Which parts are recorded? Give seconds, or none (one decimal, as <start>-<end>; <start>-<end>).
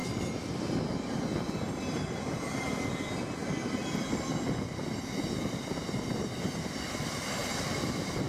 0.0-8.3